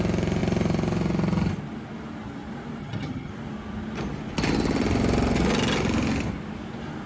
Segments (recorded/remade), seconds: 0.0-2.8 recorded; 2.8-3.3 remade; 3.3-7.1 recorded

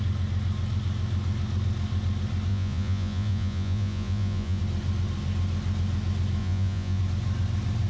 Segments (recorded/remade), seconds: 0.0-2.5 recorded; 2.5-4.6 remade; 4.6-6.4 recorded; 6.4-7.0 remade; 7.0-7.9 recorded

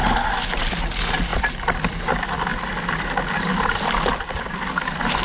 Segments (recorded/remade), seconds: 0.0-5.2 recorded

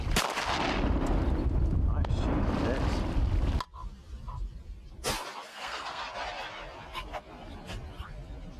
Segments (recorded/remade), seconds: 0.0-5.5 recorded; 5.5-6.0 remade; 6.0-8.6 recorded

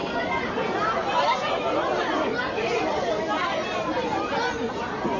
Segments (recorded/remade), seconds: 0.0-3.1 remade; 3.1-5.2 recorded

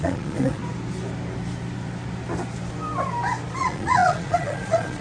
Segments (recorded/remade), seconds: 0.0-0.6 remade; 0.6-3.6 recorded; 3.6-5.0 remade

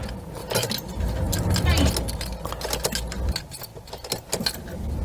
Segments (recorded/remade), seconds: 0.0-5.0 recorded